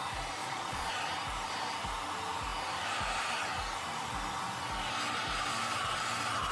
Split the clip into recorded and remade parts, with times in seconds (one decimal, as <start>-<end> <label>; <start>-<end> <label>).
0.0-0.4 recorded; 0.4-0.9 remade; 0.9-6.5 recorded